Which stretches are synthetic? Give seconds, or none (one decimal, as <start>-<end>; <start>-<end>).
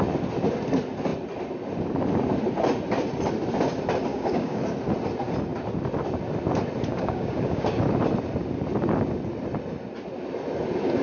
4.1-4.6; 6.9-7.8